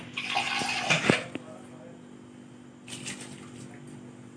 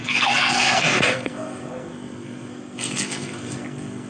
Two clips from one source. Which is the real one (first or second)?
first